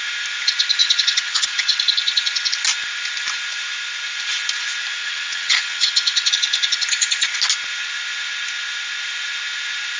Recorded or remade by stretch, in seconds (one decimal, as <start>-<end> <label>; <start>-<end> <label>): 0.0-0.8 recorded; 0.8-1.8 remade; 1.8-5.0 recorded; 5.0-6.3 remade; 6.3-10.0 recorded